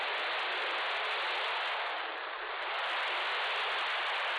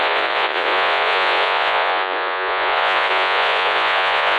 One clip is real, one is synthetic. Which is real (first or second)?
first